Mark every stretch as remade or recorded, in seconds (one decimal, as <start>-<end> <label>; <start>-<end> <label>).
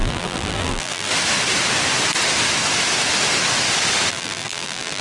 0.0-1.1 remade; 1.1-4.1 recorded; 4.1-5.0 remade